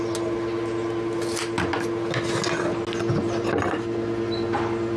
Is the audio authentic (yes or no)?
yes